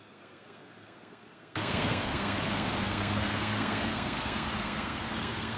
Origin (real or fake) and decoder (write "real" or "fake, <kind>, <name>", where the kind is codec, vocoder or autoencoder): fake, codec, SNAC